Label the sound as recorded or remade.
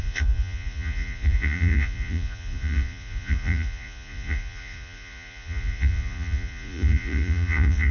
remade